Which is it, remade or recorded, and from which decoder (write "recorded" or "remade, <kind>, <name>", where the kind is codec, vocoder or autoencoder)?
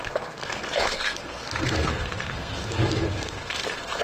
remade, codec, SNAC